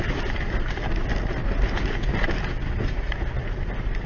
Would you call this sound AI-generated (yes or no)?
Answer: no